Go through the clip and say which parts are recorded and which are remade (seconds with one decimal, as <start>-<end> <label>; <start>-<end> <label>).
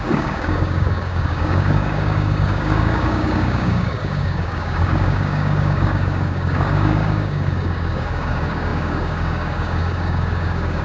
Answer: 0.0-10.8 remade